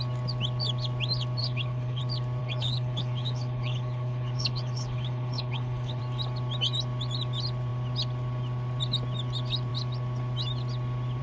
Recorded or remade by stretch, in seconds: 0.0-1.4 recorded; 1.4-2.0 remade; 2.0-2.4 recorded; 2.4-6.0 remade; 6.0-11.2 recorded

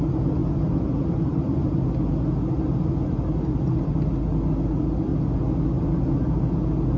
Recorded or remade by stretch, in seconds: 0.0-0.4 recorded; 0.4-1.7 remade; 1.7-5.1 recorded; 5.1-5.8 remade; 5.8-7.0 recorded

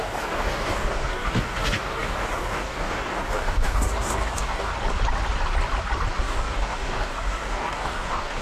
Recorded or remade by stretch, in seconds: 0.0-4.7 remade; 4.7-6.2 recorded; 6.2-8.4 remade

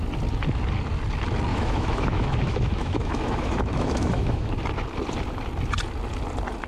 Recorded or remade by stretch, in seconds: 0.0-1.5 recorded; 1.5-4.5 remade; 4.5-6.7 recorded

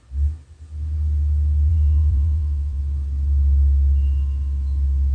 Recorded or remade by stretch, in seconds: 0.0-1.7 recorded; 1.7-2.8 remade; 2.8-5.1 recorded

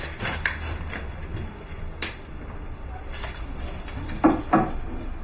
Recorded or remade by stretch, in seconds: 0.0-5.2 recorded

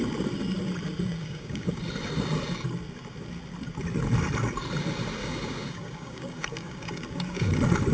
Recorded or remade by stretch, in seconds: 0.0-1.2 recorded; 1.2-1.8 remade; 1.8-5.2 recorded; 5.2-7.5 remade; 7.5-7.9 recorded